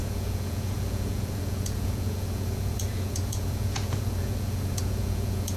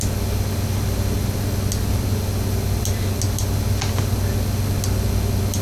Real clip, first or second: second